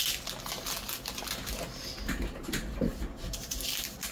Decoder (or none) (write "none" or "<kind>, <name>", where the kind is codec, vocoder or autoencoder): none